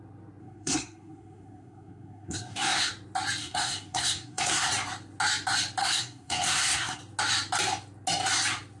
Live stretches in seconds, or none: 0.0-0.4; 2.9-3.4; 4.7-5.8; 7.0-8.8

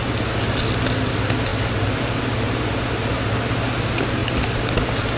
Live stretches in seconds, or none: 0.0-5.2

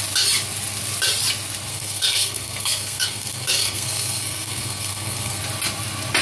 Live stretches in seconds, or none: 0.0-1.7; 5.4-6.2

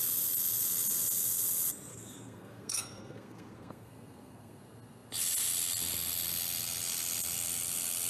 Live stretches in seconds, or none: 0.0-1.9; 4.6-8.1

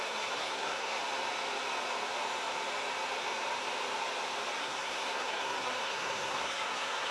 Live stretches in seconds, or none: 1.0-4.6

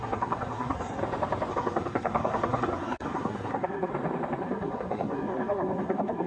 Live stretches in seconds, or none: 1.0-1.5; 3.9-4.4

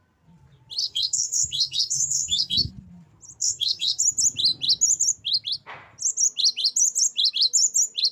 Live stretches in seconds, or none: 0.0-0.8; 2.7-3.4; 4.0-8.1